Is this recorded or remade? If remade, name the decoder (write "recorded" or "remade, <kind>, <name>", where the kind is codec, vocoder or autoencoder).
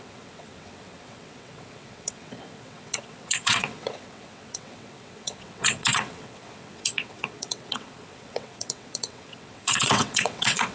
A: remade, vocoder, WaveNeXt